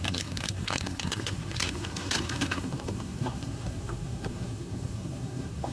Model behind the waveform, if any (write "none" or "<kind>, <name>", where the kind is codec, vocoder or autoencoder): codec, SNAC